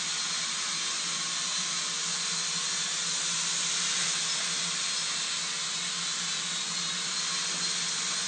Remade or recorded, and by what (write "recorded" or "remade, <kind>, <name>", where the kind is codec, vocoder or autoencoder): recorded